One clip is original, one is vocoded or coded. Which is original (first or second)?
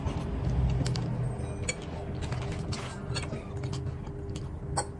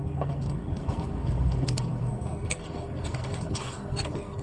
first